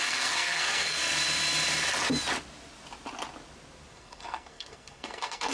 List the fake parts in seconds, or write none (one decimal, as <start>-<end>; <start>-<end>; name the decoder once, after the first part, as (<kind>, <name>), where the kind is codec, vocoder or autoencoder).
0.0-1.0 (codec, SNAC); 3.9-5.5